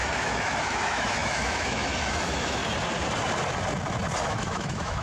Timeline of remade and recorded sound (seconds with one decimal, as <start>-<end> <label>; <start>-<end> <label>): 0.0-2.6 remade; 2.6-4.2 recorded; 4.2-5.0 remade